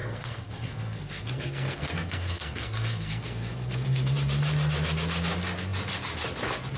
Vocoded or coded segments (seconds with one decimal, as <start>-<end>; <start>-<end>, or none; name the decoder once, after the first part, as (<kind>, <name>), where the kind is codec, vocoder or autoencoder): 0.0-4.1 (codec, SNAC)